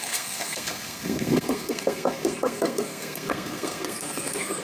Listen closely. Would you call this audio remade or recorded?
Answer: remade